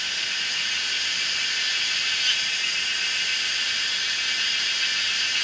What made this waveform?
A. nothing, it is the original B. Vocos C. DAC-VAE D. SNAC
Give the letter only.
A